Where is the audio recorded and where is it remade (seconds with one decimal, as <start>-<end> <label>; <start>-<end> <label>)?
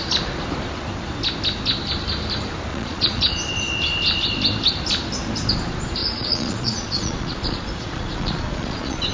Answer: 0.0-2.7 recorded; 2.7-3.3 remade; 3.3-6.0 recorded; 6.0-9.1 remade